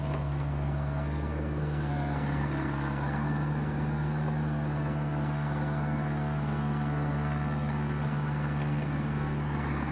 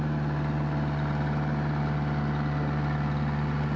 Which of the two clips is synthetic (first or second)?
first